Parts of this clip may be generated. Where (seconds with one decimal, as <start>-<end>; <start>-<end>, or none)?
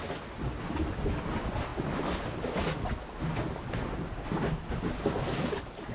none